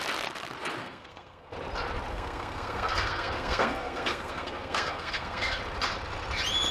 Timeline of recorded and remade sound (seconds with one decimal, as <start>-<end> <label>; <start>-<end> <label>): 0.0-0.8 recorded; 0.8-1.5 remade; 1.5-2.1 recorded; 2.1-5.6 remade; 5.6-6.7 recorded